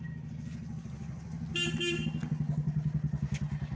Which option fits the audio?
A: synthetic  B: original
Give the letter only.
B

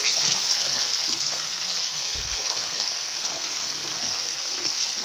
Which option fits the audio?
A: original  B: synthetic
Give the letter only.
B